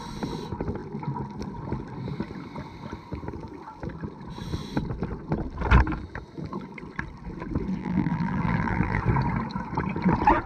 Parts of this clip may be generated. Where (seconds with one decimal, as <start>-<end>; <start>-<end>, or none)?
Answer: 7.8-9.0